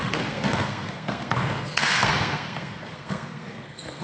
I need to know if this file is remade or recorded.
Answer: remade